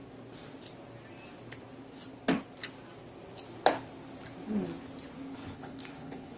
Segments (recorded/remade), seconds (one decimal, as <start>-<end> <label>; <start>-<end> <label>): 0.0-5.3 recorded; 5.3-6.4 remade